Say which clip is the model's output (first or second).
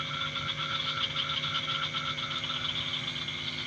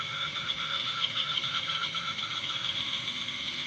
second